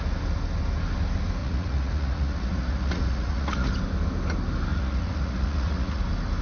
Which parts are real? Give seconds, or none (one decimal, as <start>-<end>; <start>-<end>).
0.0-1.4; 3.7-4.7; 6.0-6.4